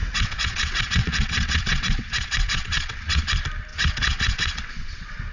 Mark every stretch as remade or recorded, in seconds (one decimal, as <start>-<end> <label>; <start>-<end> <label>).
0.0-3.2 remade; 3.2-3.7 recorded; 3.7-5.3 remade